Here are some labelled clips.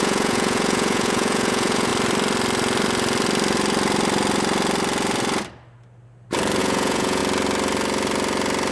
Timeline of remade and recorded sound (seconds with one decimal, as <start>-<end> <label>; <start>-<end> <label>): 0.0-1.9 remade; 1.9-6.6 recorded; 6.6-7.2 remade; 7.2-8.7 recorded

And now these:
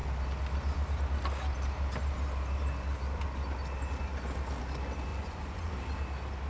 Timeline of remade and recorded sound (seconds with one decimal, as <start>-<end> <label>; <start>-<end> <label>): 0.0-5.1 recorded; 5.1-5.7 remade; 5.7-6.5 recorded

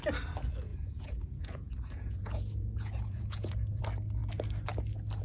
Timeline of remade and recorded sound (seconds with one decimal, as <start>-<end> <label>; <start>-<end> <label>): 0.0-0.7 recorded; 0.7-3.8 remade; 3.8-5.2 recorded